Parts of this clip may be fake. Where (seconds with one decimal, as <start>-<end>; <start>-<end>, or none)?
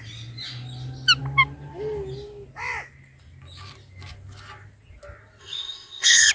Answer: 5.4-6.3